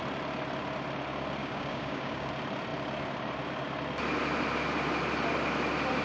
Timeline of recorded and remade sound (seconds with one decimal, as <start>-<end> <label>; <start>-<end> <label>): 0.0-1.4 recorded; 1.4-2.3 remade; 2.3-6.0 recorded